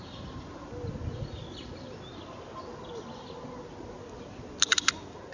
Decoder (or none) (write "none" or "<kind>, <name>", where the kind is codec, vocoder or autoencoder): none